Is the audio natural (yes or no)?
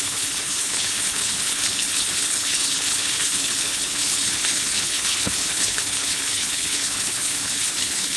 no